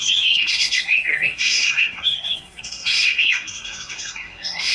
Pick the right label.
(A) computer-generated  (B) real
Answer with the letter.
A